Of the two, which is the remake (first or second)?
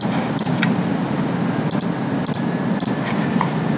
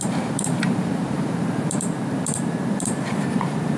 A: second